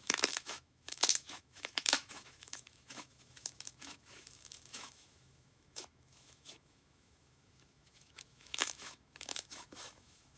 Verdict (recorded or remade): remade